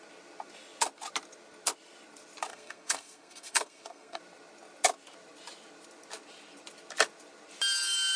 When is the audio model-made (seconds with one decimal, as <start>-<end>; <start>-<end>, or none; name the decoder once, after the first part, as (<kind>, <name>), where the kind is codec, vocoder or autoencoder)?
2.5-4.2 (codec, SNAC)